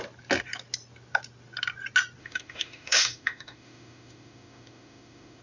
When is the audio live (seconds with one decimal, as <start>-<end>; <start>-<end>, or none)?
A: 0.0-2.2